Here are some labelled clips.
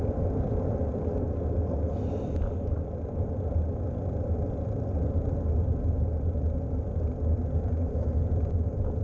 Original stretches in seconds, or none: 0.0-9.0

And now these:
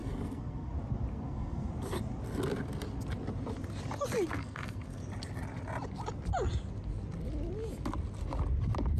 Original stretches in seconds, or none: 0.7-1.1; 1.7-4.4; 5.0-9.0

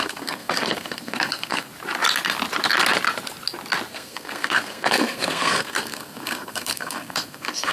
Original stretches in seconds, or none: 1.7-3.9

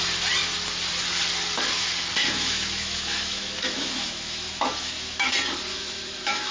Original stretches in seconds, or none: 0.0-2.2; 5.3-5.7

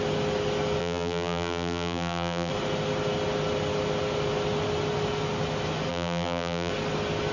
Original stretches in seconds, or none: 0.0-0.8; 2.5-5.9; 6.7-7.3

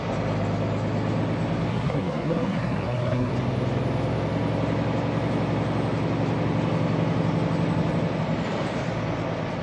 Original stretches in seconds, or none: 0.0-1.7; 3.3-9.6